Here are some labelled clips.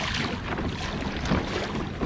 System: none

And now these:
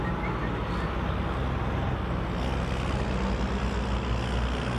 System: none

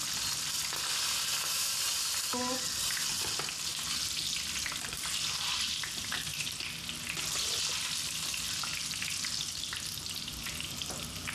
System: none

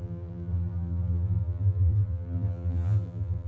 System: vocoder, BigVGAN v2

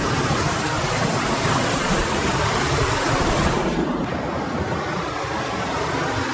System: vocoder, BigVGAN v2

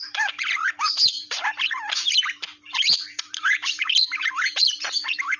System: vocoder, BigVGAN v2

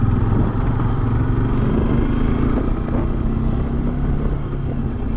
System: none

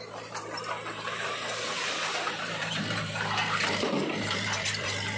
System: vocoder, BigVGAN v2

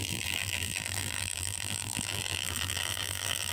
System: vocoder, BigVGAN v2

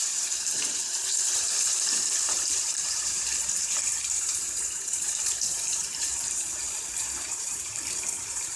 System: vocoder, BigVGAN v2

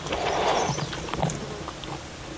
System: none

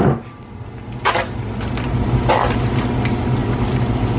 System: none